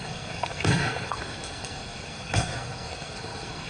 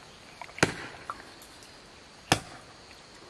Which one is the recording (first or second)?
second